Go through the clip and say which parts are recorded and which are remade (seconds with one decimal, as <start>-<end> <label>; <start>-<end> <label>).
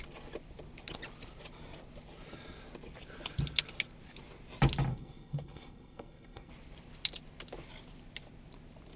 0.0-4.9 recorded; 4.9-6.5 remade; 6.5-9.0 recorded